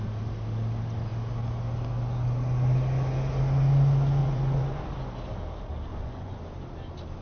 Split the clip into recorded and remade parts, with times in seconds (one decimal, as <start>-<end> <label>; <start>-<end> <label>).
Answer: 0.0-4.2 recorded; 4.2-4.8 remade; 4.8-5.9 recorded; 5.9-6.4 remade; 6.4-7.2 recorded